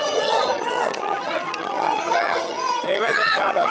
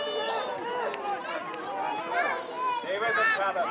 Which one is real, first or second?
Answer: second